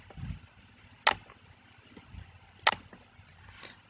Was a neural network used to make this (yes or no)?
no